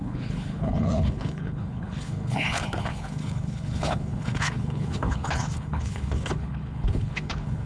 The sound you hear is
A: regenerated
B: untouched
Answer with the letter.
A